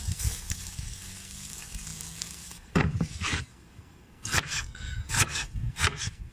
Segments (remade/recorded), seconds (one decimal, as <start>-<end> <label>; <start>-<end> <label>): 0.0-6.3 remade